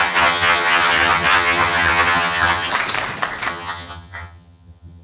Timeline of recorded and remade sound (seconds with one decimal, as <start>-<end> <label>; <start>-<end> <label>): 0.0-2.7 remade; 2.7-3.5 recorded; 3.5-5.0 remade